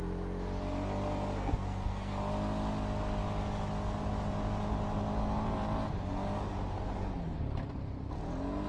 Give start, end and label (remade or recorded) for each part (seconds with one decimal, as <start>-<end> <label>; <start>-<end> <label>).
0.0-1.4 recorded; 1.4-2.1 remade; 2.1-8.7 recorded